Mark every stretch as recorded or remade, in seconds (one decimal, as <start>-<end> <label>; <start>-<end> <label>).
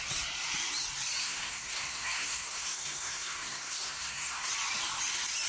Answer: 0.0-1.2 recorded; 1.2-4.5 remade; 4.5-5.5 recorded